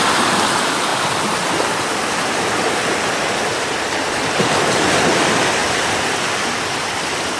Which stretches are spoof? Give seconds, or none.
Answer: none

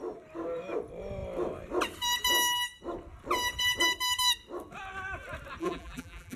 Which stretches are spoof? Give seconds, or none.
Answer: 5.6-6.4 (vocoder, BigVGAN v2)

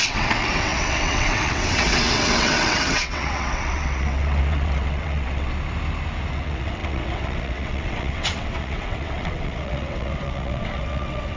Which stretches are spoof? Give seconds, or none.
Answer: 0.0-5.5 (vocoder, WaveNeXt); 6.3-11.4

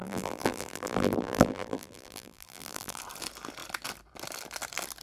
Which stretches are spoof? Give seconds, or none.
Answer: 0.0-3.0 (vocoder, BigVGAN v2)

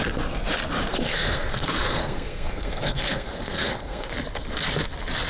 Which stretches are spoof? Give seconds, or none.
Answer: 0.9-4.1 (codec, SNAC)

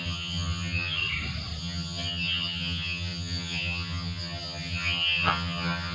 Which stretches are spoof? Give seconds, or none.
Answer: 0.0-1.0 (vocoder, HiFi-GAN); 1.6-5.9

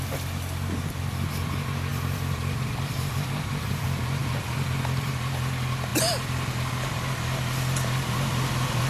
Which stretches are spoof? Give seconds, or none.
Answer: 1.9-3.7 (vocoder, BigVGAN v2); 4.2-5.1